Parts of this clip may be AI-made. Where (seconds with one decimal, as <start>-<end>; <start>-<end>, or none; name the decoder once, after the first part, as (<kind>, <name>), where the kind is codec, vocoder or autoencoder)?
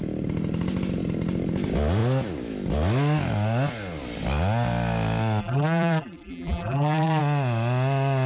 5.4-7.2 (vocoder, BigVGAN v2)